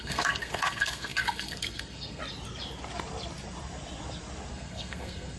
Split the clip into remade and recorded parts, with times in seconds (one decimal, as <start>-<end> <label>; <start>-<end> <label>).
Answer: 0.0-2.2 remade; 2.2-4.5 recorded; 4.5-5.4 remade